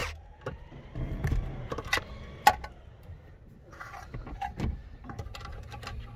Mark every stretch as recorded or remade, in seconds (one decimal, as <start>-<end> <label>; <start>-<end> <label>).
0.0-2.9 remade; 2.9-4.8 recorded; 4.8-5.5 remade; 5.5-6.2 recorded